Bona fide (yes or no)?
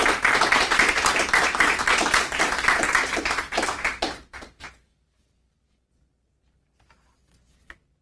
yes